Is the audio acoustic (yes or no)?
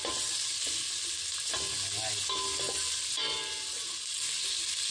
yes